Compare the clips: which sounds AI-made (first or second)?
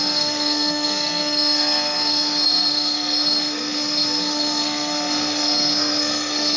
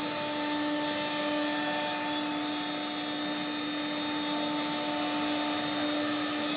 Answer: first